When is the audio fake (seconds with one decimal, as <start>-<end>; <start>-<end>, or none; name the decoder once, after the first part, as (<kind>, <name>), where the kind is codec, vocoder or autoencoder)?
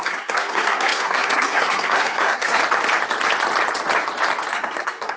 0.0-2.6 (codec, SNAC); 4.5-5.2